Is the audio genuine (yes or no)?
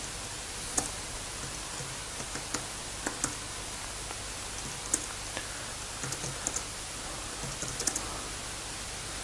yes